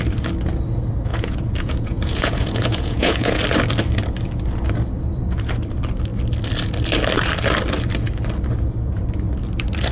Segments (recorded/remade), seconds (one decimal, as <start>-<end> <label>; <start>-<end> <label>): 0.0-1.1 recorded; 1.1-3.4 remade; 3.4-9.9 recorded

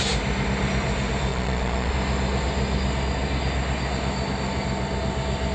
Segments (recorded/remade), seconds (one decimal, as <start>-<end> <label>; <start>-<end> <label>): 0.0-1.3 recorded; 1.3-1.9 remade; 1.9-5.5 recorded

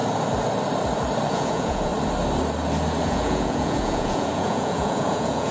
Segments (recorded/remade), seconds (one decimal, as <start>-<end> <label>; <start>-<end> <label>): 0.0-1.3 recorded; 1.3-1.9 remade; 1.9-3.0 recorded; 3.0-5.5 remade

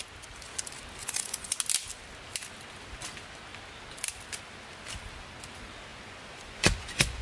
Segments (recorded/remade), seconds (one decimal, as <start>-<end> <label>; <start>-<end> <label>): 0.0-1.0 recorded; 1.0-1.6 remade; 1.6-5.9 recorded; 5.9-7.2 remade

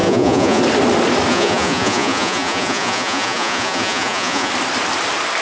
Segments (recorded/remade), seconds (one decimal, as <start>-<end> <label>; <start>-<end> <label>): 0.0-0.6 remade; 0.6-1.3 recorded; 1.3-4.5 remade; 4.5-5.4 recorded

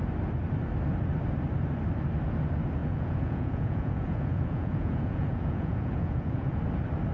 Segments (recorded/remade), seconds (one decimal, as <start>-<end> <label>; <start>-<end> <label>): 0.0-2.8 recorded; 2.8-6.6 remade; 6.6-7.1 recorded

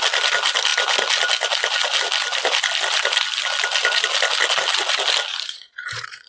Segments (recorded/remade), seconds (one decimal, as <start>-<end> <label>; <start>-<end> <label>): 0.0-5.3 recorded; 5.3-6.3 remade

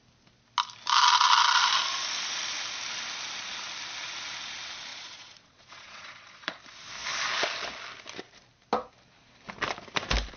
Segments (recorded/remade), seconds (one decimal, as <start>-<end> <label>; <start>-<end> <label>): 0.0-4.9 recorded; 4.9-6.6 remade; 6.6-10.4 recorded